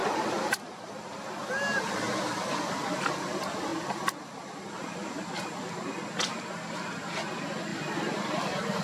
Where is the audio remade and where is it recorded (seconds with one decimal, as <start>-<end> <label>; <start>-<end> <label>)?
0.0-0.7 remade; 0.7-7.7 recorded; 7.7-8.8 remade

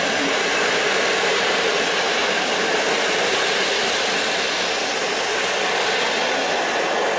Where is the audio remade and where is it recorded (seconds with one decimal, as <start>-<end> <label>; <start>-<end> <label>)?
0.0-7.2 recorded

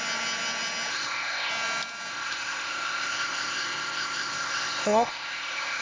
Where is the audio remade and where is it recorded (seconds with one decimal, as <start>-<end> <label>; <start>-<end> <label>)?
0.0-0.9 recorded; 0.9-1.5 remade; 1.5-2.1 recorded; 2.1-5.8 remade

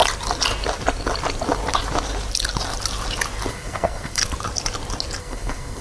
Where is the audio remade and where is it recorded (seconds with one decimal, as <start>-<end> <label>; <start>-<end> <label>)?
0.0-3.5 recorded; 3.5-4.2 remade; 4.2-5.2 recorded; 5.2-5.8 remade